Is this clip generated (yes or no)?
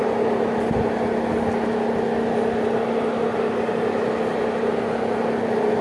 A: no